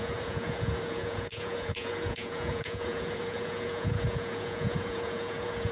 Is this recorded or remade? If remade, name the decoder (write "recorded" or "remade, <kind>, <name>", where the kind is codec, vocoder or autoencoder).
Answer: remade, vocoder, Vocos